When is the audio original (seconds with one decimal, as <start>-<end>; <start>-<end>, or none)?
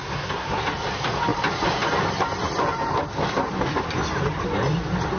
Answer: 0.6-5.2